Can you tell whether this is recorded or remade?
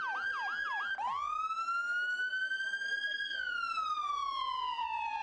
recorded